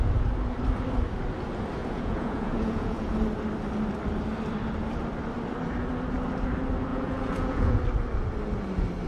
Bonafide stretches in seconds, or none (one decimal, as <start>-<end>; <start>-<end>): 0.0-1.8; 3.1-6.9; 7.8-9.1